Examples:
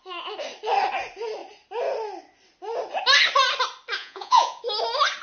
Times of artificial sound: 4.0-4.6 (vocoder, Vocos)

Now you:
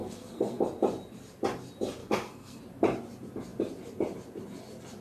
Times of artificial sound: 0.0-0.6 (codec, SNAC); 2.0-2.6

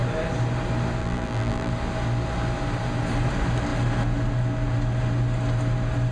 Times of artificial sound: 1.0-1.7 (vocoder, BigVGAN v2)

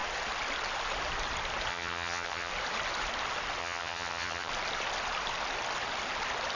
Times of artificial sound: 1.7-2.5 (vocoder, HiFi-GAN); 3.6-4.5

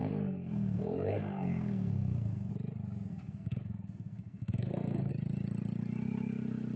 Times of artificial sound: 0.0-2.5 (codec, SNAC); 3.1-5.1